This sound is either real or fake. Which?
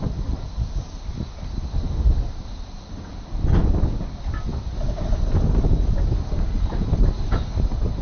real